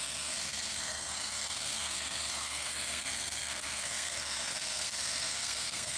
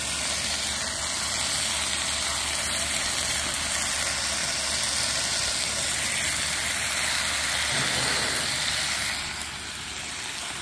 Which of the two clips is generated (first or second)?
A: first